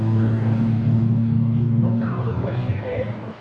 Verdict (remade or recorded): remade